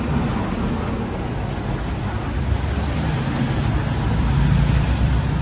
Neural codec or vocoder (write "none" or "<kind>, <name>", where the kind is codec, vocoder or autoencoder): none